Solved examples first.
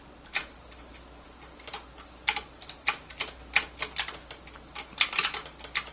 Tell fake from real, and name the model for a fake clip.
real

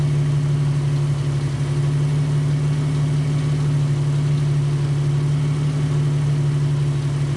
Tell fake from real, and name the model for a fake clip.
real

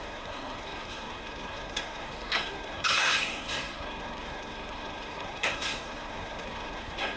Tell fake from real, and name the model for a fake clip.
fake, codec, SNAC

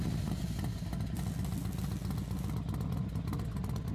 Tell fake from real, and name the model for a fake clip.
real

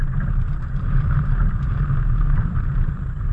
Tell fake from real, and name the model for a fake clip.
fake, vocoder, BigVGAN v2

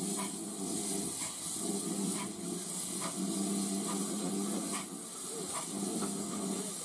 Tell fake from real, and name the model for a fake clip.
real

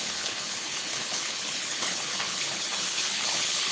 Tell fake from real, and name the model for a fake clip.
fake, codec, HILCodec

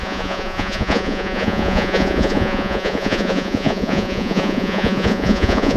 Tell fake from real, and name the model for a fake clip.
fake, vocoder, Vocos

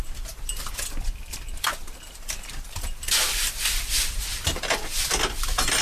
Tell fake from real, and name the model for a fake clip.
real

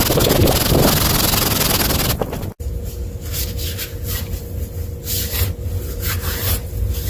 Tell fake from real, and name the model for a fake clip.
real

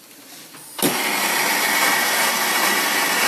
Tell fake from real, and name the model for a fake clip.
real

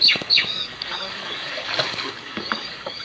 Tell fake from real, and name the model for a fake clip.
fake, codec, DAC